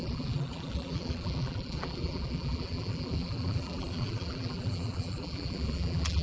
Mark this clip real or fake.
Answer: fake